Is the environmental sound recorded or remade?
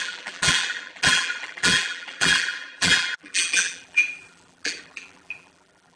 remade